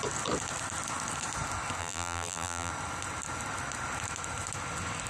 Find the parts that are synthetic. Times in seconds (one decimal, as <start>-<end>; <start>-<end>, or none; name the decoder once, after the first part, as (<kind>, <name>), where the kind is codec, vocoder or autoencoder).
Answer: 1.8-2.7 (vocoder, BigVGAN v2)